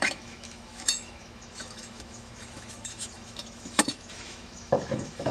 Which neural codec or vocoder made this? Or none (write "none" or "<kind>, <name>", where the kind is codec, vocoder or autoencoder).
autoencoder, DAC-VAE